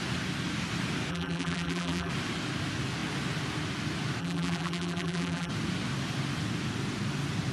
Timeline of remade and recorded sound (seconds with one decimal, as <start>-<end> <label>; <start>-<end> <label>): 0.0-1.1 recorded; 1.1-2.1 remade; 2.1-4.2 recorded; 4.2-5.5 remade; 5.5-7.5 recorded